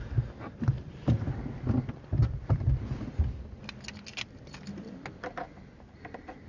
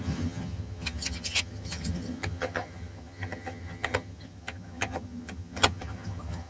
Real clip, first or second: first